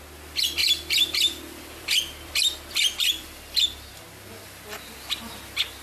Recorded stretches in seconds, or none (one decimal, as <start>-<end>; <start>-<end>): 0.0-0.6; 3.9-5.8